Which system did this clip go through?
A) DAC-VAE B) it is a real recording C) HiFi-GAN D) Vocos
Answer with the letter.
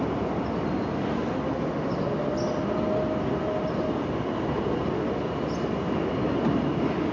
B